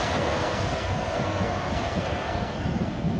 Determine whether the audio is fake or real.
fake